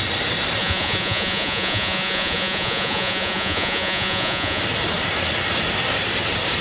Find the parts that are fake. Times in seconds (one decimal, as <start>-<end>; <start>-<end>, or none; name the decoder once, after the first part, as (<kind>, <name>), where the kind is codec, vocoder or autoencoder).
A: 0.6-4.6 (vocoder, Vocos)